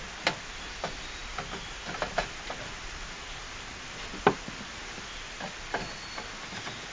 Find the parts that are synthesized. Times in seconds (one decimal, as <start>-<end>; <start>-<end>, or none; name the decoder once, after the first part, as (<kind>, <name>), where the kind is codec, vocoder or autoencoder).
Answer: none